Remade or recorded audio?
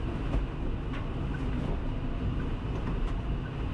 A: recorded